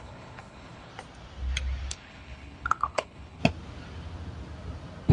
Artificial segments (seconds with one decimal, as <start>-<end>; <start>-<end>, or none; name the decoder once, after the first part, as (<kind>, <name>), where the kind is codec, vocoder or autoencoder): 0.0-0.9 (codec, HILCodec); 1.9-3.4